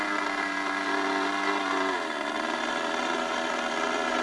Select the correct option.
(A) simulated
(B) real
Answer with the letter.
B